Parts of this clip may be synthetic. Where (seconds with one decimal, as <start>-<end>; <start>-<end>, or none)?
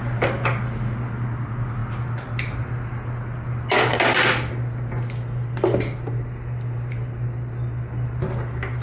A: none